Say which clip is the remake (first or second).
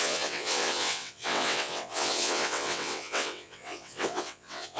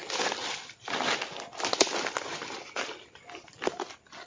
first